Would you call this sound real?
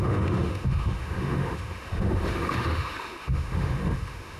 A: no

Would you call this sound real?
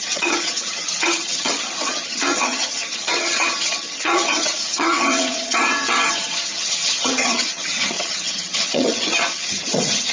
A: no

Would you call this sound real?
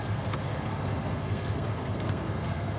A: no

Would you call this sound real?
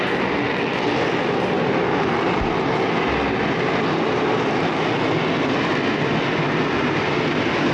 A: yes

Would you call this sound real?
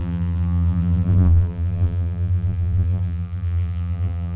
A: no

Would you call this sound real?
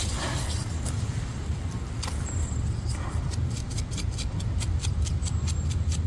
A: no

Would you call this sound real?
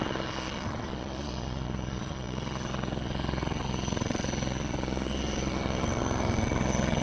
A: no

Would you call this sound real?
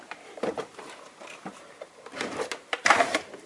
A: no